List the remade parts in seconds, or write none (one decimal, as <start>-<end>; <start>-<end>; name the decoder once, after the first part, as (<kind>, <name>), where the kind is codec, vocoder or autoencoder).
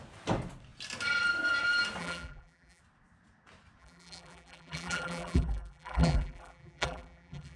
2.0-2.8 (vocoder, BigVGAN v2); 3.8-7.6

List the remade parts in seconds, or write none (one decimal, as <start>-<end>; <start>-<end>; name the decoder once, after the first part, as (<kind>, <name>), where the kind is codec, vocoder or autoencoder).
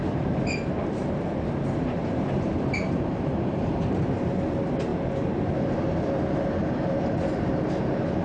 0.0-8.2 (vocoder, BigVGAN v2)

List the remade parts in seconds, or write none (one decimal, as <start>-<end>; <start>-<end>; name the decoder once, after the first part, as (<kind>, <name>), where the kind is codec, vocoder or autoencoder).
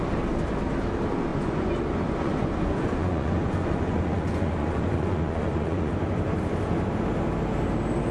1.3-5.9 (vocoder, Vocos)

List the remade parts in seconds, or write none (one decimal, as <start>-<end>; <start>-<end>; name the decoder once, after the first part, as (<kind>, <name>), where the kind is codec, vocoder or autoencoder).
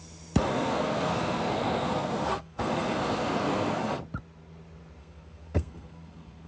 0.5-3.9 (codec, SNAC); 5.0-6.5